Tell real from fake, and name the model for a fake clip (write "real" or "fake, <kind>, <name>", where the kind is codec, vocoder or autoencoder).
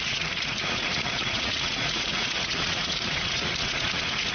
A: fake, vocoder, Vocos